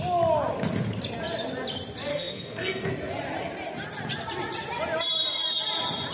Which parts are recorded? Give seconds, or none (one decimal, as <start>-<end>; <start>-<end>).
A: 0.0-2.1; 2.9-6.1